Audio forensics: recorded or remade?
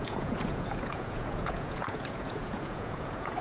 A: remade